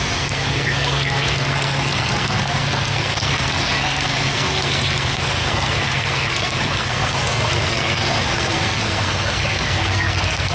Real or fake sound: fake